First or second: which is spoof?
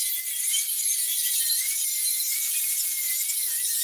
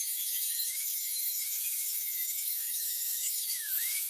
second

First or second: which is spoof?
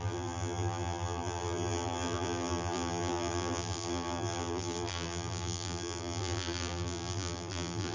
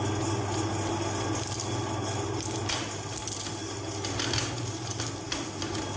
first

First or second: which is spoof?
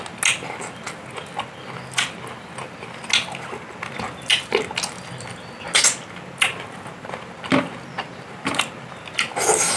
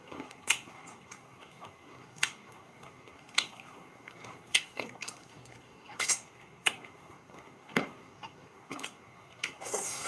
second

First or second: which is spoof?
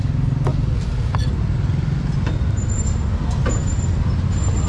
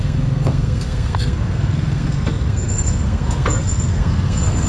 second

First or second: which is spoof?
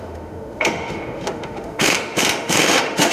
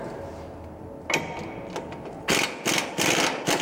first